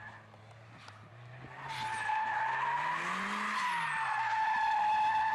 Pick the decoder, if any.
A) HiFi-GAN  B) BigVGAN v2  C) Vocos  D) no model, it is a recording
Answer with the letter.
D